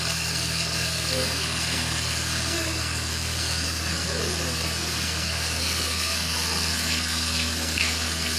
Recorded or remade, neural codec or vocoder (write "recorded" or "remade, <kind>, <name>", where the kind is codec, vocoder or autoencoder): remade, codec, SNAC